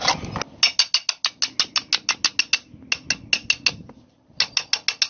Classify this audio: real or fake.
real